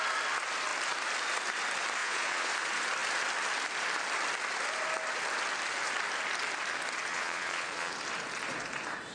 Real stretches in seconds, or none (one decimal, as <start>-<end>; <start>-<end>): 0.0-2.0; 2.5-7.1; 7.9-9.1